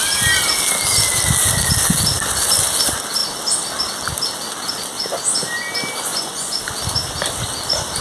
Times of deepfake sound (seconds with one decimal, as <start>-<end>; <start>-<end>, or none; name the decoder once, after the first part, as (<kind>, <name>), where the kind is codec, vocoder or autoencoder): 6.1-6.6 (vocoder, Vocos)